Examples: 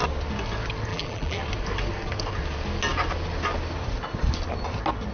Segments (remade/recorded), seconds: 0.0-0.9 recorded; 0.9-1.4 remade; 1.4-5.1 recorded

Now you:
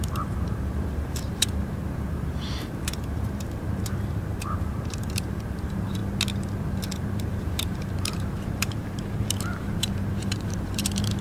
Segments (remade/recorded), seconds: 0.0-6.0 remade; 6.0-7.3 recorded; 7.3-11.2 remade

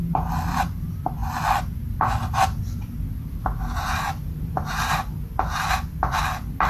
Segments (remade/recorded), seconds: 0.0-6.7 recorded

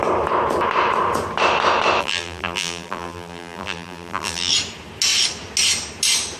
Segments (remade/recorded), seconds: 0.0-2.0 recorded; 2.0-4.5 remade; 4.5-6.4 recorded

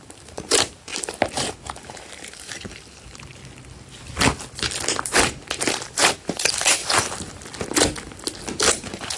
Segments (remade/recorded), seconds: 0.0-0.9 remade; 0.9-1.8 recorded; 1.8-3.4 remade; 3.4-5.7 recorded; 5.7-6.8 remade; 6.8-8.6 recorded; 8.6-9.2 remade

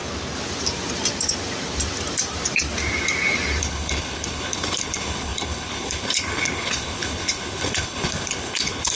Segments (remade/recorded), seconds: 0.0-3.6 recorded; 3.6-9.0 remade